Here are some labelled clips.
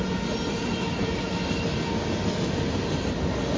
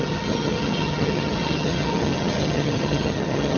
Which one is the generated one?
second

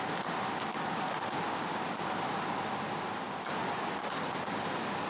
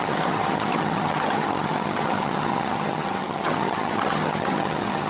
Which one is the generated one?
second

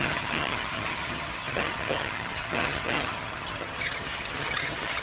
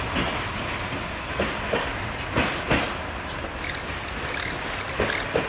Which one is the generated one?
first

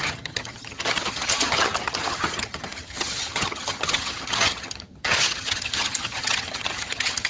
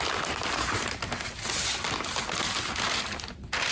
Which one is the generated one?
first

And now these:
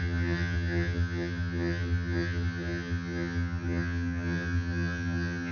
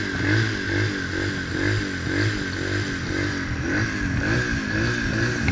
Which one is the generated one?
first